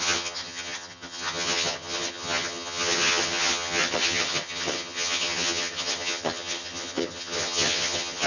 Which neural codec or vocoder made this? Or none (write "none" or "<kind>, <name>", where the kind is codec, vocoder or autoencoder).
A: vocoder, HiFi-GAN